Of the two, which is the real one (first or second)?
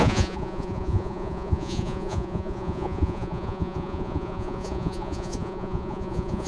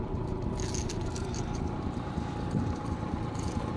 second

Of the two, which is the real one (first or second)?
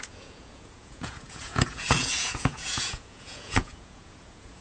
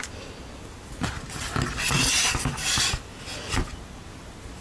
second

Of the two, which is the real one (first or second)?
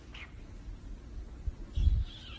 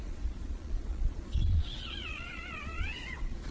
first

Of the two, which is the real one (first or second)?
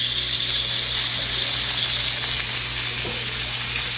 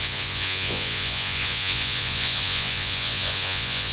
first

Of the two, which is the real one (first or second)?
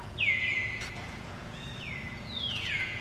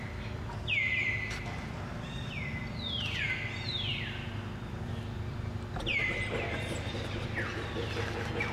second